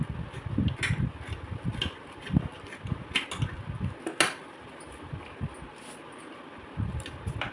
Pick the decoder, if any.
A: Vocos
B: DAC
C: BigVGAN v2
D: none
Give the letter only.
D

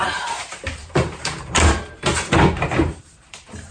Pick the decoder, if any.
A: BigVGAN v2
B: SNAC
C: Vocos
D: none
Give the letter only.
A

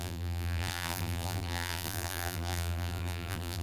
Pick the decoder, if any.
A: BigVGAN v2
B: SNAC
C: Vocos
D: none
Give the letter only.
A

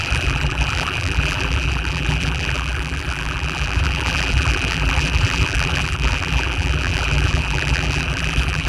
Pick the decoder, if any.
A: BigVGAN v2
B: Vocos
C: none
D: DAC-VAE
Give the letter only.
A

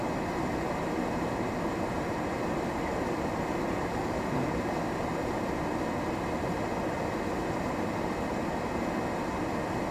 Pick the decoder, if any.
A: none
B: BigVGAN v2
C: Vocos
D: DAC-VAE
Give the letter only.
A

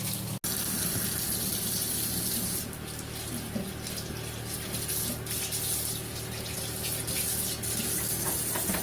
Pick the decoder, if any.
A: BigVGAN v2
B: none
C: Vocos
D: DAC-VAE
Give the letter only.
B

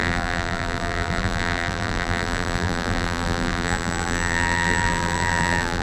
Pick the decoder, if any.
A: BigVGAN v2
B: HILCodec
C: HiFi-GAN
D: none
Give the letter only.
A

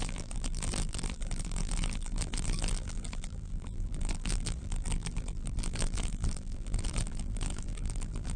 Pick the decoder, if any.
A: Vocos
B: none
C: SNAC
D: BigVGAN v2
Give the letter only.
D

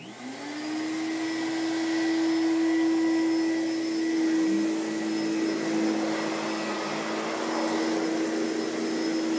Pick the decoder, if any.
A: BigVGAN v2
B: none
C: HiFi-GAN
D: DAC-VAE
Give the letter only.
B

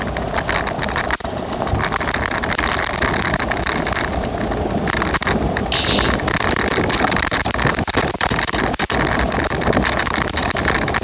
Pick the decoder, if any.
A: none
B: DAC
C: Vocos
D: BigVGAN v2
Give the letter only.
A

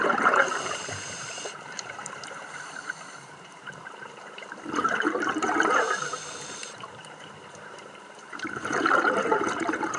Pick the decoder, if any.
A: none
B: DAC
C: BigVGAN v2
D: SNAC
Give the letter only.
C